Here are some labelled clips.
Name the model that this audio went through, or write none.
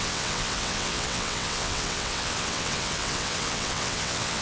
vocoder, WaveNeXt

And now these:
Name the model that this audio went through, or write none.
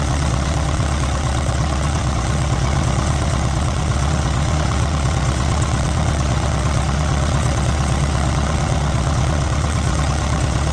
vocoder, WaveNeXt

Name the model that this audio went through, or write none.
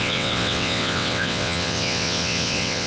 vocoder, WaveNeXt